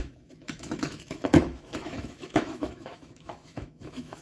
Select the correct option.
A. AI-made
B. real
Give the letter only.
A